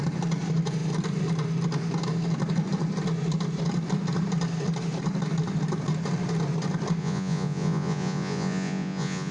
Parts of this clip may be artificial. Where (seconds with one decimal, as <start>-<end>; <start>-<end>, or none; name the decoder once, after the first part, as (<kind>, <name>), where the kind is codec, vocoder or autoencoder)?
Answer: 7.0-9.3 (vocoder, Vocos)